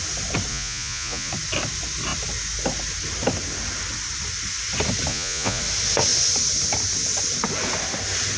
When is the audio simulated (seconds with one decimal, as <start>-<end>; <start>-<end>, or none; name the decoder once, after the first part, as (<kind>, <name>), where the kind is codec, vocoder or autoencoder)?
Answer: 0.5-1.3 (vocoder, Vocos); 5.1-5.6